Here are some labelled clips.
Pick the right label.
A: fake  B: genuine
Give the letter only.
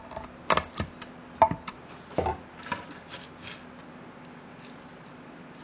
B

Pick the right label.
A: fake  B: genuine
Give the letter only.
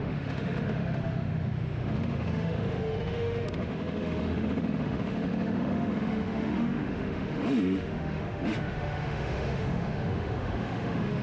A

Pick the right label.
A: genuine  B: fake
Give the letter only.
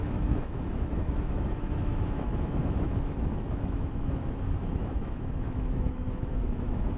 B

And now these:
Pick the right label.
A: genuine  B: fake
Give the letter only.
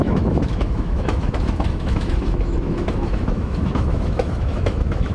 B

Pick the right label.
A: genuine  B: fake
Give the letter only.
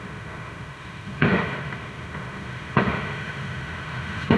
B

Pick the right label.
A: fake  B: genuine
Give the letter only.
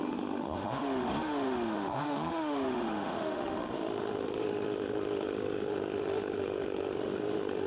A